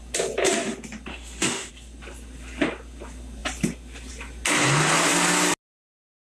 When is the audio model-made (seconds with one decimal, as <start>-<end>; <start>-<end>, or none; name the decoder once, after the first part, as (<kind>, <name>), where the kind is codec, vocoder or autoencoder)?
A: 1.1-1.7 (autoencoder, DAC-VAE)